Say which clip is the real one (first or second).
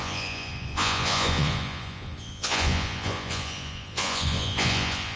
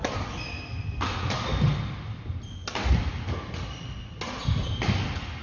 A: second